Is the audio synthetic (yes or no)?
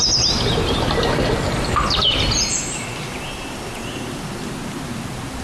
no